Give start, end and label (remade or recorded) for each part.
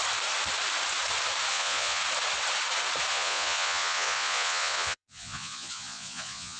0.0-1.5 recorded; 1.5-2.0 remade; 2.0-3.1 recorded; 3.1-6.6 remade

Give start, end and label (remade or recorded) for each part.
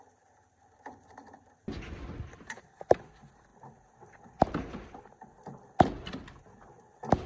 0.0-7.3 recorded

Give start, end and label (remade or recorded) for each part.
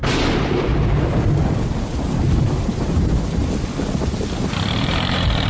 0.0-0.7 remade; 0.7-2.7 recorded; 2.7-3.4 remade; 3.4-4.7 recorded; 4.7-5.5 remade